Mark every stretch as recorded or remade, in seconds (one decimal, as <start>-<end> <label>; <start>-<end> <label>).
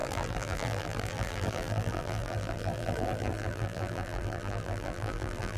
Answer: 0.0-5.6 remade